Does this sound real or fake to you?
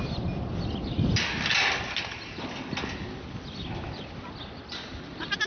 real